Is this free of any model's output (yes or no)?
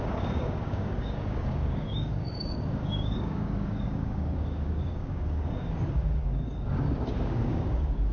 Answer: no